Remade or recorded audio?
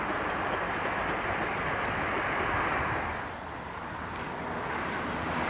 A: recorded